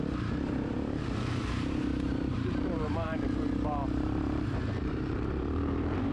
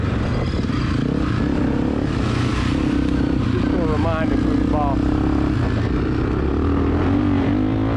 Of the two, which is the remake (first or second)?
first